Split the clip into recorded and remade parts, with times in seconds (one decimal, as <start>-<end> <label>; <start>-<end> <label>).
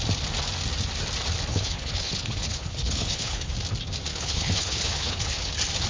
0.0-1.5 recorded; 1.5-3.5 remade; 3.5-4.1 recorded; 4.1-5.5 remade; 5.5-5.9 recorded